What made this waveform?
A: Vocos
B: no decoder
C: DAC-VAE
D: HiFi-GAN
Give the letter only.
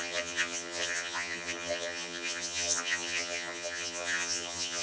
D